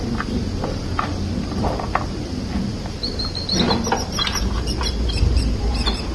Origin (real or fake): fake